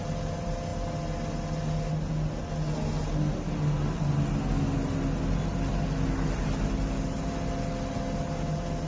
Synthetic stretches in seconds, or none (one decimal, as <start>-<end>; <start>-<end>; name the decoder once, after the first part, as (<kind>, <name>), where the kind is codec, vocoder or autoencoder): none